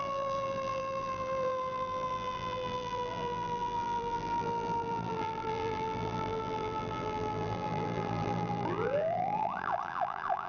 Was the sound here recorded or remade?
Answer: remade